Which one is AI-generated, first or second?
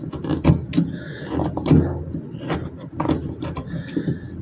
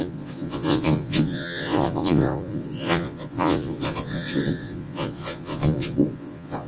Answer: second